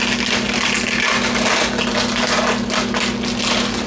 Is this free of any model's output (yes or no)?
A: yes